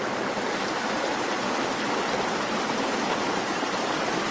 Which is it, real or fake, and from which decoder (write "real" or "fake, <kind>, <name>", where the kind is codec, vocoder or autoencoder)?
real